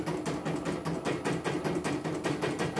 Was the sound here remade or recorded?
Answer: recorded